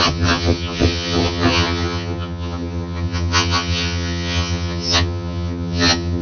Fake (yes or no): yes